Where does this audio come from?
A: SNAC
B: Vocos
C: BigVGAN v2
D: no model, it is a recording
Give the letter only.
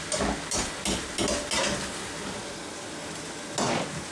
D